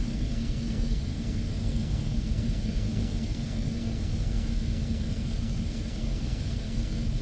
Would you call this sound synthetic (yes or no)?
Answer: yes